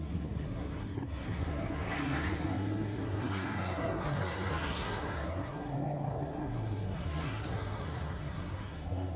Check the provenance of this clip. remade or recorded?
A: remade